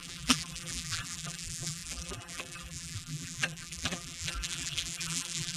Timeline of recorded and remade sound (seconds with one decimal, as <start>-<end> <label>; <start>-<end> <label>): 0.0-5.6 remade